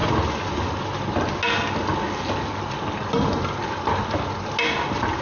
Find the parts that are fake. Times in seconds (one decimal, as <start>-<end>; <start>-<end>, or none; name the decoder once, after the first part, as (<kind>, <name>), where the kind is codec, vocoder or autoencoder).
none